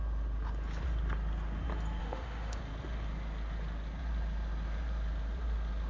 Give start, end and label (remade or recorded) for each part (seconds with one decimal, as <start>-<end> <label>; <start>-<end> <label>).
0.0-2.0 recorded; 2.0-2.6 remade; 2.6-5.9 recorded